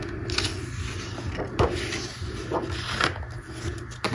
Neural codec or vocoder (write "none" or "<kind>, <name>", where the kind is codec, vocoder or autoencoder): none